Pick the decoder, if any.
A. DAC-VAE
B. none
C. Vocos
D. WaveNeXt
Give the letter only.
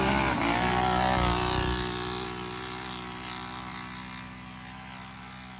B